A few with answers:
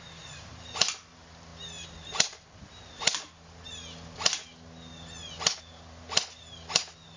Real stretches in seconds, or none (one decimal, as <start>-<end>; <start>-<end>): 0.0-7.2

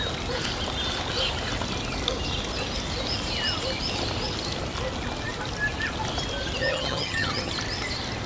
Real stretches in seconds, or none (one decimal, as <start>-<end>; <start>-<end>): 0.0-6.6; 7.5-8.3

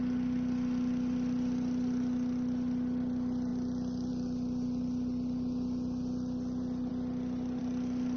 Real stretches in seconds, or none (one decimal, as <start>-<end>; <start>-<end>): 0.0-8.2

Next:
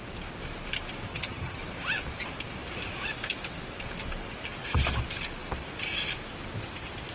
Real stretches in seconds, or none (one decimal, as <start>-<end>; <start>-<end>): 0.0-1.1; 1.6-7.1